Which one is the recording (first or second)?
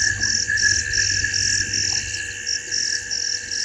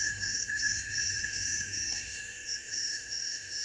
first